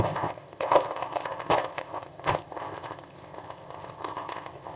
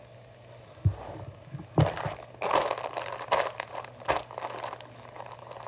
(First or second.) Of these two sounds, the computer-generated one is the first